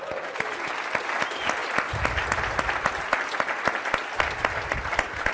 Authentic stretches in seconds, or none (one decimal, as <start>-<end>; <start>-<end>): 0.0-5.3